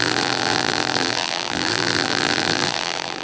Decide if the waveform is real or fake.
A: fake